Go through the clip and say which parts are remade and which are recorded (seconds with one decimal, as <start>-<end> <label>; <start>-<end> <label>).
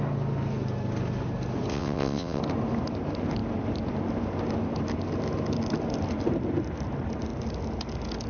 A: 0.0-1.7 recorded; 1.7-2.4 remade; 2.4-8.3 recorded